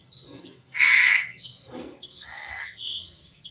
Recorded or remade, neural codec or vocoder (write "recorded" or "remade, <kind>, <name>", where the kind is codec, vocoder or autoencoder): remade, codec, SNAC